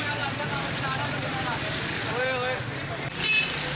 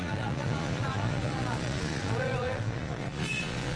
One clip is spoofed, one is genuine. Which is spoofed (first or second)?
second